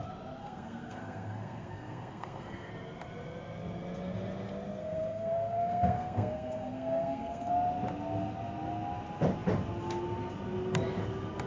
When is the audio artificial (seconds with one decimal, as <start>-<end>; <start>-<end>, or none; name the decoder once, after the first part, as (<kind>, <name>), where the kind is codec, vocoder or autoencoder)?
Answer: 0.4-2.7 (codec, SNAC); 4.8-7.5